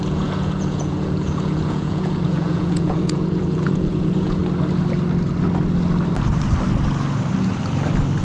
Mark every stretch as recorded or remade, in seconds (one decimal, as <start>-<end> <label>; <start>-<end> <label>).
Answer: 0.0-4.4 remade; 4.4-8.2 recorded